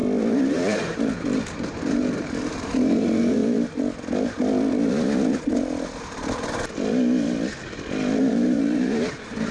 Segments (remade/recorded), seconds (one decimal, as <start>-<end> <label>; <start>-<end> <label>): 0.0-0.5 recorded; 0.5-3.4 remade; 3.4-8.2 recorded; 8.2-9.5 remade